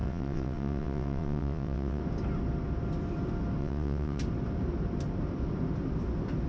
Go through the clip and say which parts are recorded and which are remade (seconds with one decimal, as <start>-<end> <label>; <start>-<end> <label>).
0.0-2.0 remade; 2.0-3.6 recorded; 3.6-4.2 remade; 4.2-6.5 recorded